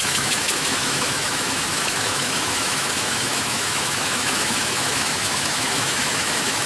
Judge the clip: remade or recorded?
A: remade